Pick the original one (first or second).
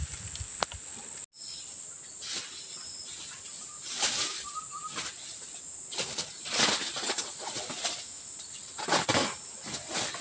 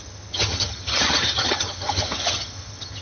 first